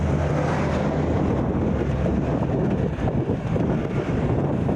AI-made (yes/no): no